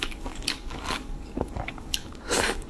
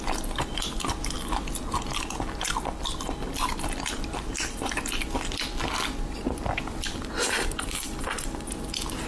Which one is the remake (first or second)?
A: first